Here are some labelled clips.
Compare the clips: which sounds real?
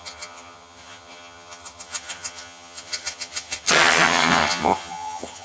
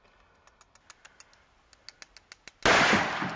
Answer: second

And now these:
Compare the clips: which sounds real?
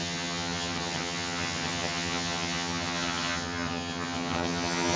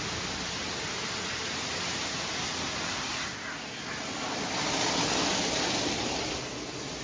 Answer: second